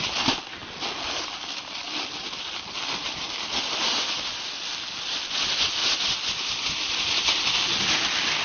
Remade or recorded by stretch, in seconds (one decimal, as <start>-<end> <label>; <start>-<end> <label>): 0.0-8.4 recorded